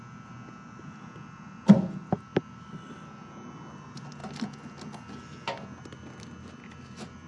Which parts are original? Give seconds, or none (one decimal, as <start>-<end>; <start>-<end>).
0.0-7.3